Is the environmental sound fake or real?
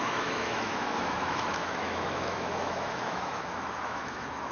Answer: fake